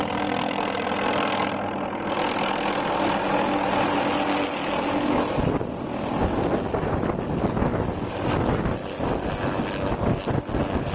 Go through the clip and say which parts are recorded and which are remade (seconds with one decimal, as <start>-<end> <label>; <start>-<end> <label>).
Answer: 0.0-10.9 recorded